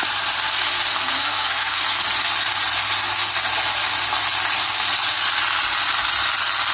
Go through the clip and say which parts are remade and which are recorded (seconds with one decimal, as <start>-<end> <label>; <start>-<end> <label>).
0.0-1.2 recorded; 1.2-1.8 remade; 1.8-6.7 recorded